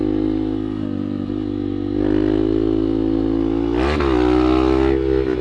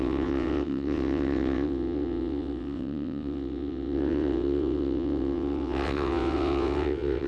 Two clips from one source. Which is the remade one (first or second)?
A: second